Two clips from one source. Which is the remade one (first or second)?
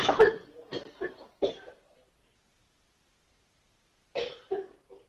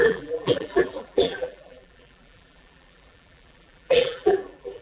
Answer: second